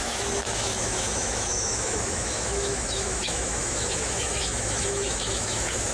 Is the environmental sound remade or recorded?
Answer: remade